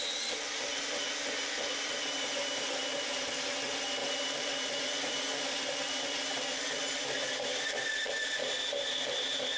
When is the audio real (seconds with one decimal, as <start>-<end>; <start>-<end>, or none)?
0.0-4.0; 5.2-7.0